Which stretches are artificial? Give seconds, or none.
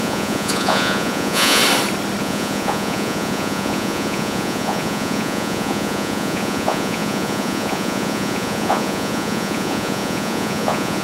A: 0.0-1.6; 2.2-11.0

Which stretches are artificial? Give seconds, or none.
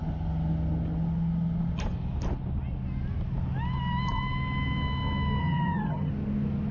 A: 5.4-6.1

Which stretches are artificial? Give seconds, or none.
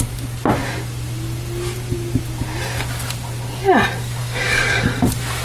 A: 4.2-4.9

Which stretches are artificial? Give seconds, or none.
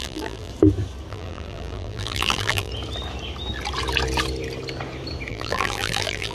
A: 0.0-0.5; 1.1-2.7; 5.3-6.3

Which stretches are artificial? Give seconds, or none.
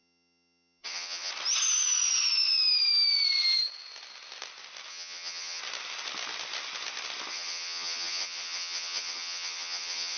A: 0.0-1.3; 4.9-5.6; 7.3-10.2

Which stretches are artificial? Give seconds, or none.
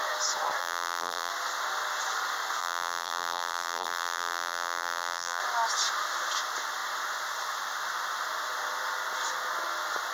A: 0.6-1.3; 2.6-5.4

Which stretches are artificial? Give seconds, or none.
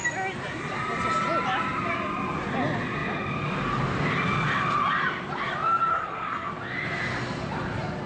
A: 5.9-6.5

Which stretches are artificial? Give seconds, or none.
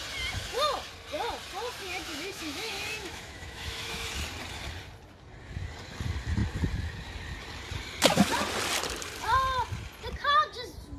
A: 1.8-4.1